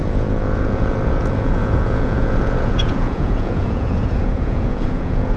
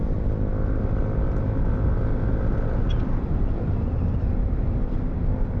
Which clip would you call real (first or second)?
second